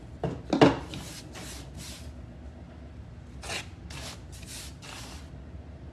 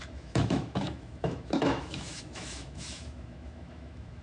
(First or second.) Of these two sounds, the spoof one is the second